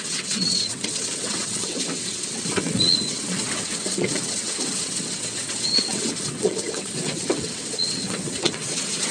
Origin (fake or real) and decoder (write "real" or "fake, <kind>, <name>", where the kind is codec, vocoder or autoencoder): fake, vocoder, WaveNeXt